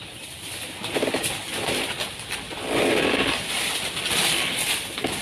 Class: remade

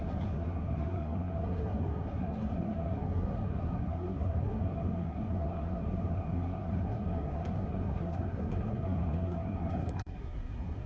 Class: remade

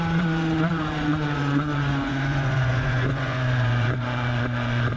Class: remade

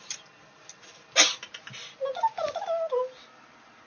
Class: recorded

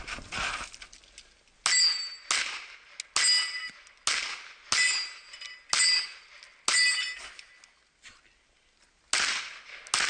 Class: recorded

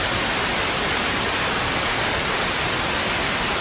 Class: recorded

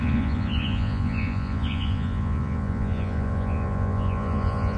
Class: remade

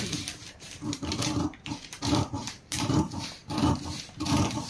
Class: remade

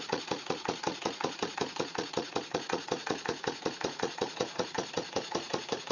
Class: remade